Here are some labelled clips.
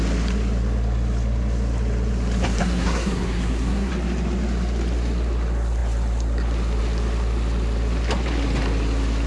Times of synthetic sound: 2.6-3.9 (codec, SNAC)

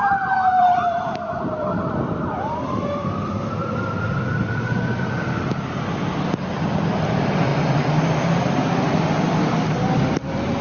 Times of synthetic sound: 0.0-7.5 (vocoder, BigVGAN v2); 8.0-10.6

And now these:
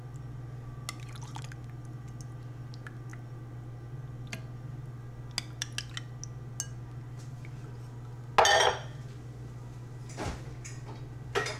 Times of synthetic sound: none